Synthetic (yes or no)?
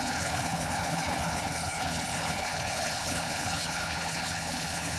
yes